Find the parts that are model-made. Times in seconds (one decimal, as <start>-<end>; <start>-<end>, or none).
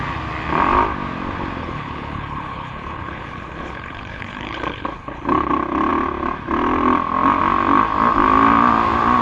1.6-5.5